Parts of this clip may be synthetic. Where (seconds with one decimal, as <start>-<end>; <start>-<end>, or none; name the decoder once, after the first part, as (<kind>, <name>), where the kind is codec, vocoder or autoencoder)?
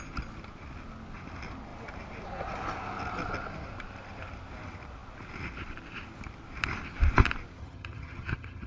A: 7.6-8.7 (vocoder, HiFi-GAN)